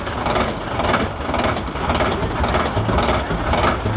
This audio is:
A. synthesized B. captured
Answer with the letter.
B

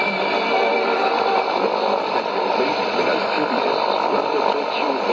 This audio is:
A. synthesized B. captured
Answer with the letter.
B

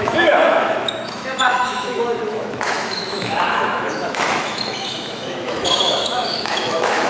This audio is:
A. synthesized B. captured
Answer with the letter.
A